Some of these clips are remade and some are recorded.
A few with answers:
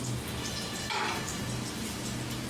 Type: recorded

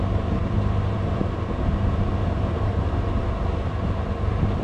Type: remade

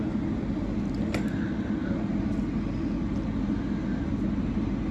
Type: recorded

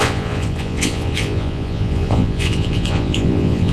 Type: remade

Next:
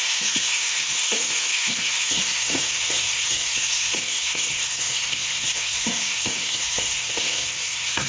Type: remade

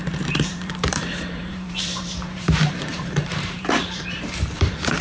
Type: remade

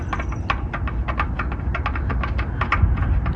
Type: recorded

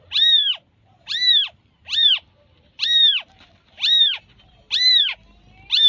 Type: remade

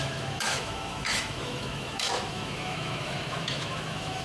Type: remade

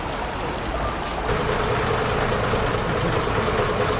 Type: recorded